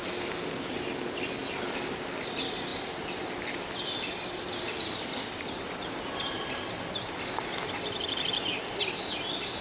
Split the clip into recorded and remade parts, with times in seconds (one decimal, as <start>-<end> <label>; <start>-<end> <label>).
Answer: 0.0-2.7 recorded; 2.7-6.9 remade; 6.9-9.6 recorded